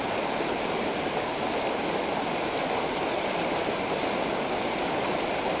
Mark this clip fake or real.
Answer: real